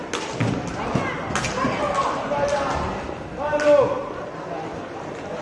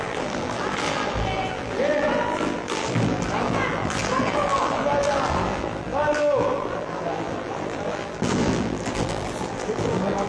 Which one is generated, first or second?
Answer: second